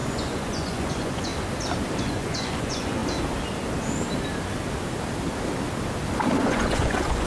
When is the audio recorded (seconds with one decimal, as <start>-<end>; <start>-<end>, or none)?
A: 1.3-2.0; 3.0-6.4